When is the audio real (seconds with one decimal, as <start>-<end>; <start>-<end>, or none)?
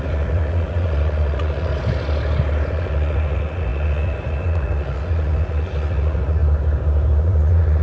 1.7-2.7; 6.4-7.2